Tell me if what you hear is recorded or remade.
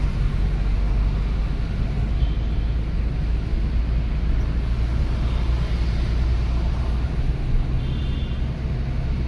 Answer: recorded